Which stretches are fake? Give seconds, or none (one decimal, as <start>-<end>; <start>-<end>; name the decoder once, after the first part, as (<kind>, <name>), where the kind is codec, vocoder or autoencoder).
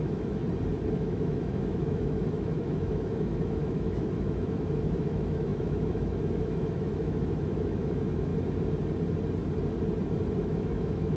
0.0-0.4 (autoencoder, DAC-VAE); 0.9-8.3; 10.4-11.2